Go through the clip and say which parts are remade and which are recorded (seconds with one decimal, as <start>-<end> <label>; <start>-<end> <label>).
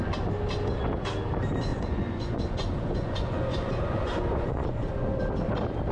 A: 0.0-1.7 recorded; 1.7-5.2 remade; 5.2-5.9 recorded